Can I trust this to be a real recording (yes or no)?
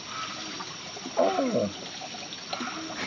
yes